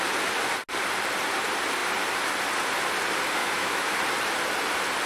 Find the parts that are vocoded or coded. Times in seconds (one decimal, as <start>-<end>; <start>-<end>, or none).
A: 3.4-4.0